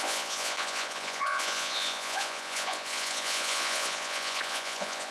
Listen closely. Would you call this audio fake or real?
fake